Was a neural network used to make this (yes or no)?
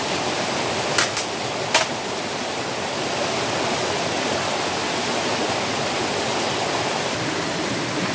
no